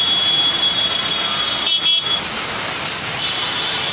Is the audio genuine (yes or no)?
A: yes